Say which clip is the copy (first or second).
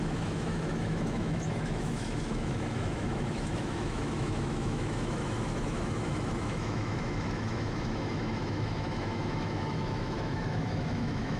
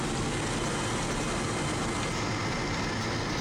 first